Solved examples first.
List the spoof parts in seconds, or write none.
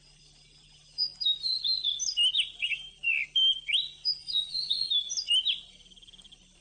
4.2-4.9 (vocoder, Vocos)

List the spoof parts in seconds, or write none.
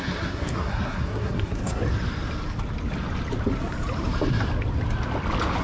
0.0-1.8 (codec, SNAC)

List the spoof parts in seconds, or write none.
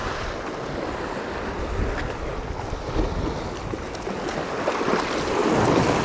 none